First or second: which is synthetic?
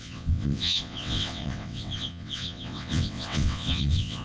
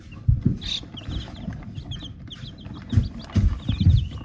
first